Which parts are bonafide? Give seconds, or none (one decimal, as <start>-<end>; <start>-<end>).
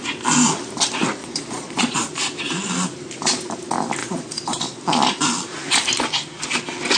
0.0-1.2; 2.0-4.0; 4.6-7.0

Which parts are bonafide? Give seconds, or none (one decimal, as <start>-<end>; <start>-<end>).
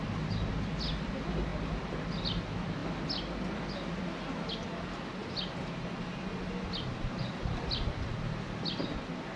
0.0-9.4